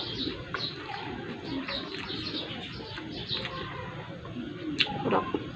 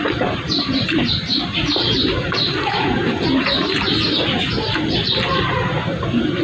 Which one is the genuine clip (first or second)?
first